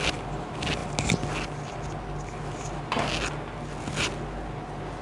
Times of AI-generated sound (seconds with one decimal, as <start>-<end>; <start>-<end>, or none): none